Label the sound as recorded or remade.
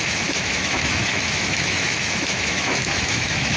remade